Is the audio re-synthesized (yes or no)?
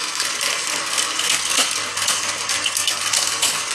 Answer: yes